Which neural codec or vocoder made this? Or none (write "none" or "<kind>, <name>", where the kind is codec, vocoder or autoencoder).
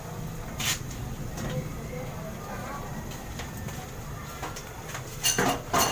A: none